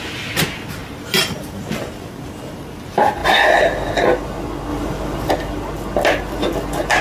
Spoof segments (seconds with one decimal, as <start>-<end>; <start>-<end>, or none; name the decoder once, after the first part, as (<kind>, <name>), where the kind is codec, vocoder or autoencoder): 0.8-1.7 (vocoder, BigVGAN v2); 4.7-5.3